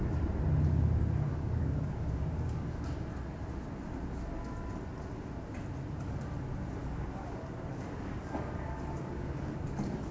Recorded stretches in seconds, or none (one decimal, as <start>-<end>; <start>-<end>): 0.0-1.3; 2.8-6.8